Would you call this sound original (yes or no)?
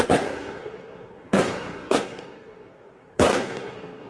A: no